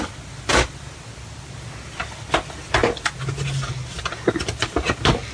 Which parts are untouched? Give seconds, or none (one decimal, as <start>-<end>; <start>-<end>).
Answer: 0.0-5.3